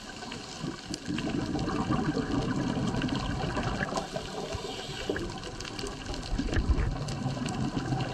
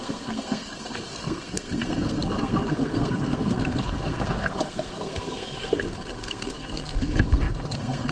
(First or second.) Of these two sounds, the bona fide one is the first